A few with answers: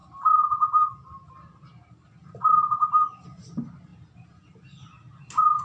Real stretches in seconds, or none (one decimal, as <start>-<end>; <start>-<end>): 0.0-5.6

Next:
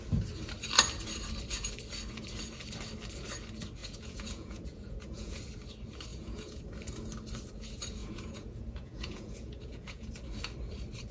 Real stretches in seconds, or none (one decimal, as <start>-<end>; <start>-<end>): 0.0-3.8; 5.4-6.1; 6.6-8.0; 10.1-11.1

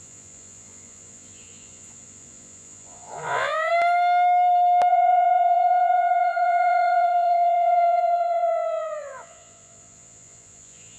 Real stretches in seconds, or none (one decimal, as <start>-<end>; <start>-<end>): 3.7-4.9

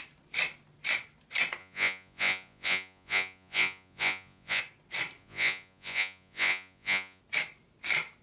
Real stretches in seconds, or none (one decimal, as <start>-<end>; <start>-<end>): 0.0-1.6; 4.6-5.2; 7.2-8.2

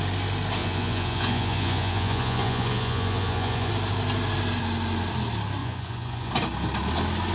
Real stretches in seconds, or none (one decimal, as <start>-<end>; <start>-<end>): 0.0-0.6; 3.7-5.6; 6.3-7.3

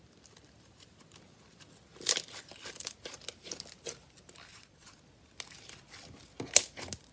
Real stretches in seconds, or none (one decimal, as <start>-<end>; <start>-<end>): 0.0-4.5; 5.0-7.1

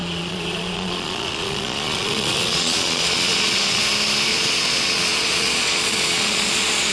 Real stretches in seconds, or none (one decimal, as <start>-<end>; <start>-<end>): 3.8-4.3